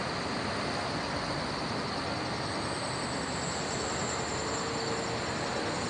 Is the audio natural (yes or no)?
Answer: yes